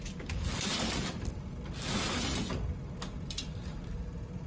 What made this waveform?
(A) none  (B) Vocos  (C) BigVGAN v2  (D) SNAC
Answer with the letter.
A